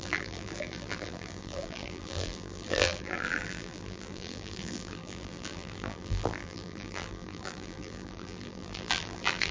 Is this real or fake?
fake